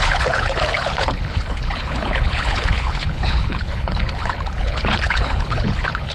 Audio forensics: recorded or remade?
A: remade